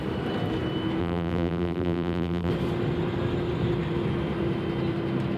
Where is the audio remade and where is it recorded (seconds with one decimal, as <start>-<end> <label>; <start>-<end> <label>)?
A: 0.0-1.0 recorded; 1.0-2.5 remade; 2.5-5.4 recorded